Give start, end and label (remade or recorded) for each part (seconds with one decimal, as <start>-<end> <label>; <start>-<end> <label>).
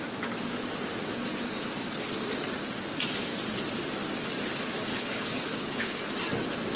0.0-4.9 recorded; 4.9-6.1 remade; 6.1-6.8 recorded